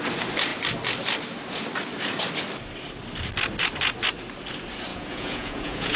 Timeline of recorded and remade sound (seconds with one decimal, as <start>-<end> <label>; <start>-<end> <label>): 0.0-4.9 recorded; 4.9-6.0 remade